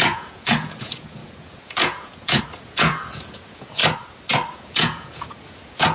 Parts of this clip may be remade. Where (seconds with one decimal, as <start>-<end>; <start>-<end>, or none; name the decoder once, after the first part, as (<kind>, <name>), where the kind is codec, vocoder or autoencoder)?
0.0-3.8 (vocoder, Vocos); 4.5-5.9